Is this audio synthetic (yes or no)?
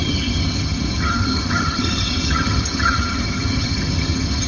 yes